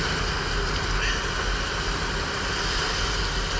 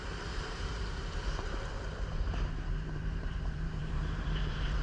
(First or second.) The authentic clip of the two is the first